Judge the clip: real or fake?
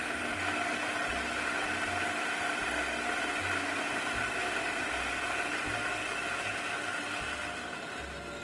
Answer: real